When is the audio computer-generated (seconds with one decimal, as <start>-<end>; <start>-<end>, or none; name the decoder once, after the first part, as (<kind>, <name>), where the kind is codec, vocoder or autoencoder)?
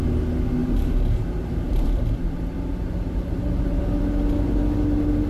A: 0.6-3.8 (vocoder, BigVGAN v2)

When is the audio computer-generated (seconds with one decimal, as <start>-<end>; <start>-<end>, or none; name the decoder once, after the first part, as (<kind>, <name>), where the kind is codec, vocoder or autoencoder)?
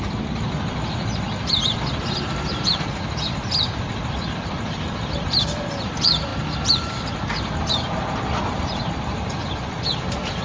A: 0.0-10.4 (vocoder, BigVGAN v2)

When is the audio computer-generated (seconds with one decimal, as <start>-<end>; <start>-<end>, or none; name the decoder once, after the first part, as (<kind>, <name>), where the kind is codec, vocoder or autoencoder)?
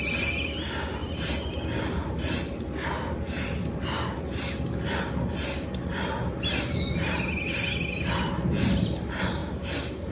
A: none